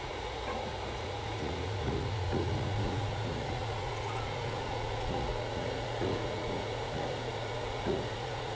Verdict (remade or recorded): remade